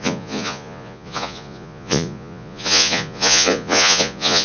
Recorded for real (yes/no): no